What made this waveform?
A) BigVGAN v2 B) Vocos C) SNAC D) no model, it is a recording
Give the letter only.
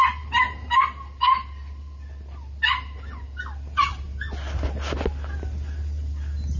D